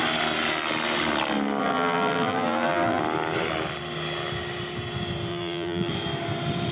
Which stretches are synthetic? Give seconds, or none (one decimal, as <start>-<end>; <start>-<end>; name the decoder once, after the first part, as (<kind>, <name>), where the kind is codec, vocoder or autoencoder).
1.6-3.0 (vocoder, BigVGAN v2); 5.3-5.9